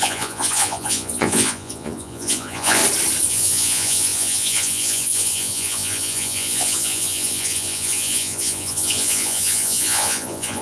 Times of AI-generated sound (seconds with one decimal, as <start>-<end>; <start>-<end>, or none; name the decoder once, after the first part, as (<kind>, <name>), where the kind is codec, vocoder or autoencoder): 0.0-2.8 (vocoder, Vocos); 3.3-10.6